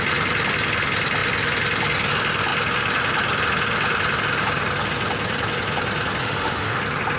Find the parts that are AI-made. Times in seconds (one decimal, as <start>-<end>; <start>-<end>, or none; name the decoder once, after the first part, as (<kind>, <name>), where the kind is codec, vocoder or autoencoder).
6.2-6.8 (autoencoder, DAC-VAE)